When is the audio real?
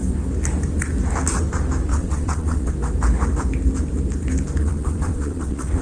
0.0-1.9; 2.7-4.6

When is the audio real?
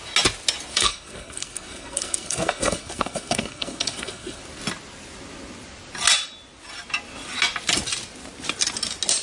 0.0-0.7; 4.4-9.2